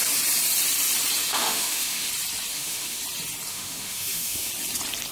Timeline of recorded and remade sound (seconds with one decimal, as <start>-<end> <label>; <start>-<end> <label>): 0.0-1.3 recorded; 1.3-2.1 remade; 2.1-2.5 recorded; 2.5-3.0 remade; 3.0-3.5 recorded; 3.5-4.5 remade; 4.5-5.1 recorded